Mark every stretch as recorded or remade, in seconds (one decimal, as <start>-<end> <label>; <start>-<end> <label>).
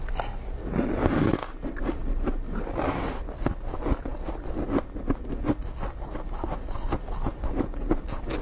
0.0-1.3 recorded; 1.3-2.0 remade; 2.0-8.4 recorded